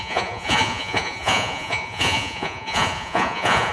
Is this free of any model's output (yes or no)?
no